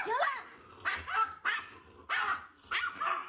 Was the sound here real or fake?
real